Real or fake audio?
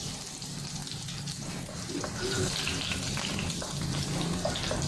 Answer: fake